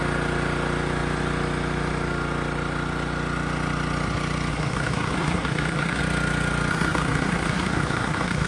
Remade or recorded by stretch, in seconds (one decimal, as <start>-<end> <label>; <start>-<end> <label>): 0.0-4.5 recorded; 4.5-6.0 remade; 6.0-6.7 recorded; 6.7-8.5 remade